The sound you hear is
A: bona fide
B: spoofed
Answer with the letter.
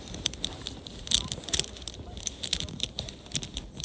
A